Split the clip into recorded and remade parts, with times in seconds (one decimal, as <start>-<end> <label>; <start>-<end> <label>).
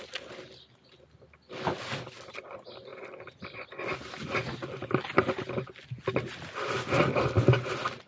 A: 0.0-8.1 recorded